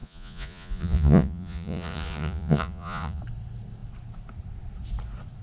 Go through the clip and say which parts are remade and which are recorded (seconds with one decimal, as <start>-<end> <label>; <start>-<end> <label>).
0.0-3.2 remade; 3.2-5.4 recorded